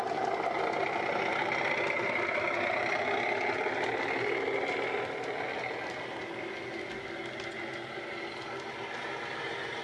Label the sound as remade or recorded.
recorded